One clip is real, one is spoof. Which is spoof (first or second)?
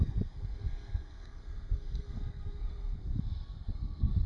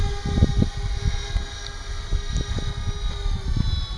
first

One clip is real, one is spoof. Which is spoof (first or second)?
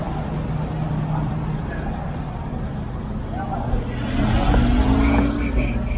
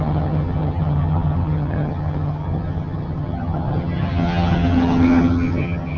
second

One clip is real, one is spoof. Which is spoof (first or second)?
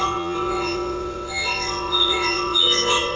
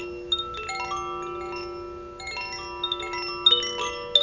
first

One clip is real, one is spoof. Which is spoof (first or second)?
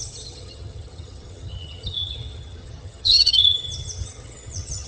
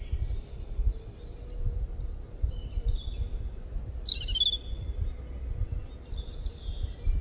first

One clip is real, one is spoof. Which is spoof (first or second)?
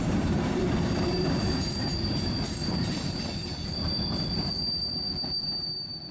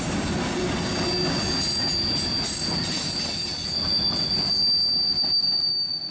first